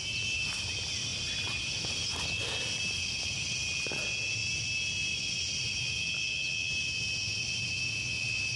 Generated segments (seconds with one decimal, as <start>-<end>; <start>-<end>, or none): none